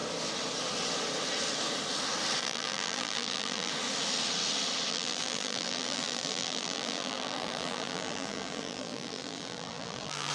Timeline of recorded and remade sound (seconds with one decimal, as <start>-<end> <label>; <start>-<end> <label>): 0.0-2.4 recorded; 2.4-3.7 remade; 3.7-4.9 recorded; 4.9-10.3 remade